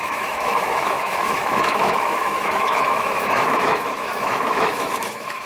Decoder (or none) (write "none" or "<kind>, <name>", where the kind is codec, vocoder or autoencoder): autoencoder, DAC-VAE